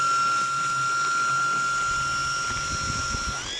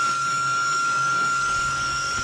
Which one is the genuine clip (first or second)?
first